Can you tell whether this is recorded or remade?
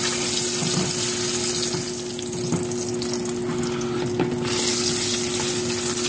recorded